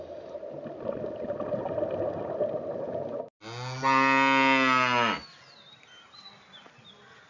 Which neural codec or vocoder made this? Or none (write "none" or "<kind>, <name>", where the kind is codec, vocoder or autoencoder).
none